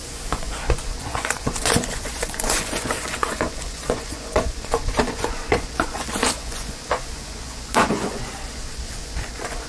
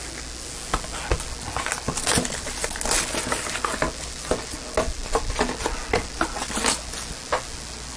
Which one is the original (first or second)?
second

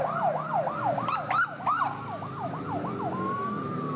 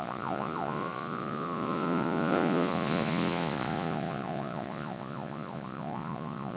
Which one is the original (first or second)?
first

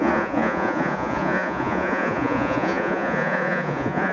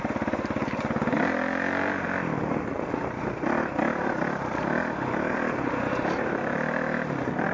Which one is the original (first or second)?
second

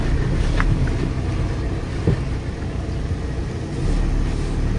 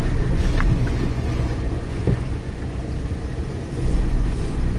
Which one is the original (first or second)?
first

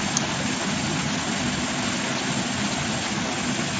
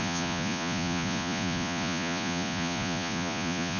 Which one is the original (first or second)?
first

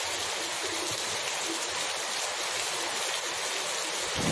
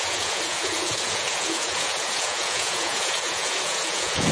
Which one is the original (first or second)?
first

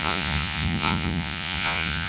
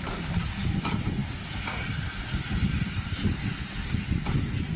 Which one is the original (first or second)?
second